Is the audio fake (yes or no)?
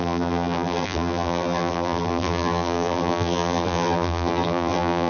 yes